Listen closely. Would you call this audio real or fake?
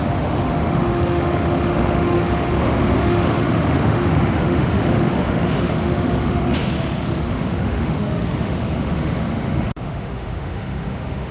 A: fake